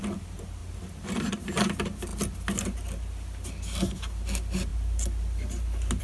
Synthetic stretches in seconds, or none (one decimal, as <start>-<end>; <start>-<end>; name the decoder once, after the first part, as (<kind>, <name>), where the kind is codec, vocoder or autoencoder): none